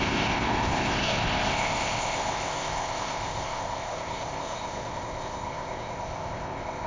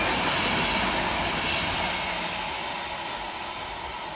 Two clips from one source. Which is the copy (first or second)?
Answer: first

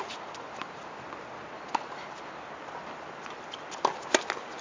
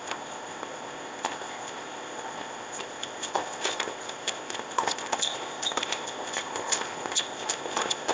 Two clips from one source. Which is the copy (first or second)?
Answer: second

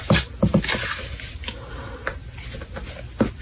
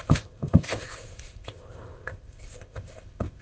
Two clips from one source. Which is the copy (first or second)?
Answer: second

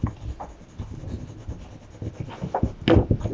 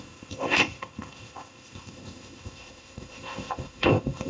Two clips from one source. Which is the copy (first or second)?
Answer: second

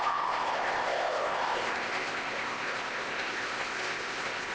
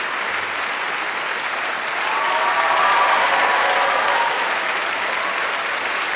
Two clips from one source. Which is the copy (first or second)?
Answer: first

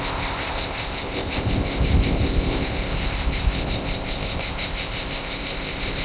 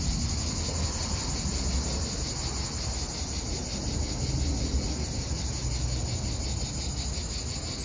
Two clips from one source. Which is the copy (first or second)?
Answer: first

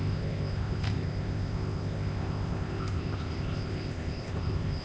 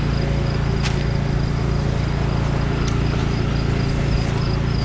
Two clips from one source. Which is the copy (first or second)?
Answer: first